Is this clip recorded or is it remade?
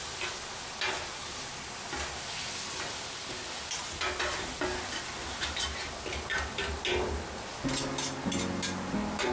recorded